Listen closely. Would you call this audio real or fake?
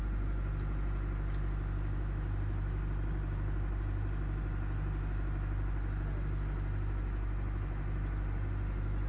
real